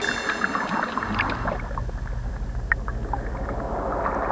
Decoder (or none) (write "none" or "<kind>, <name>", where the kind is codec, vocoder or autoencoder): none